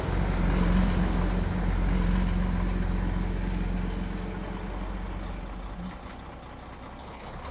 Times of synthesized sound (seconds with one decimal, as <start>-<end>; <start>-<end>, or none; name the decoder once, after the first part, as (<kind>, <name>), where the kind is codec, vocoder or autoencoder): 7.0-7.5 (codec, HILCodec)

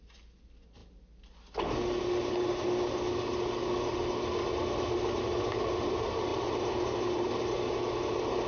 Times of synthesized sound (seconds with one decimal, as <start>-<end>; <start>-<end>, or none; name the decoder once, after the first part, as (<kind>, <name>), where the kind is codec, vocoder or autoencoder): none

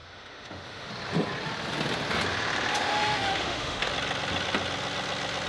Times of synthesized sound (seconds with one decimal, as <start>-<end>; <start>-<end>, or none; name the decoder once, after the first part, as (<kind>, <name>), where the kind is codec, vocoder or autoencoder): 0.0-0.9 (autoencoder, DAC-VAE); 2.7-3.9